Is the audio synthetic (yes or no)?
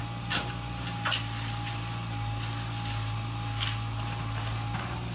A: no